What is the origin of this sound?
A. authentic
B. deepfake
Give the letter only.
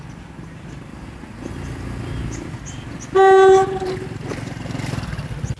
A